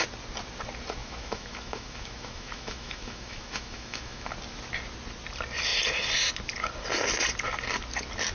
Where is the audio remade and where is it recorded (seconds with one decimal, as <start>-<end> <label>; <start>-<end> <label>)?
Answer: 0.0-1.0 recorded; 1.0-4.3 remade; 4.3-8.3 recorded